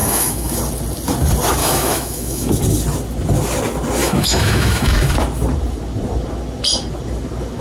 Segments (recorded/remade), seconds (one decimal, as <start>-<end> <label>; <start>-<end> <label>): 0.0-0.6 remade; 0.6-1.6 recorded; 1.6-2.5 remade; 2.5-4.0 recorded; 4.0-5.1 remade; 5.1-7.6 recorded